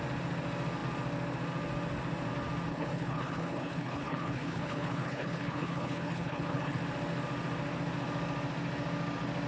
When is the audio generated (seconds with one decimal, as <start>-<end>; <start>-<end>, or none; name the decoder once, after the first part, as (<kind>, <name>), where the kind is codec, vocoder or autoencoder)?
2.7-6.8 (codec, HILCodec)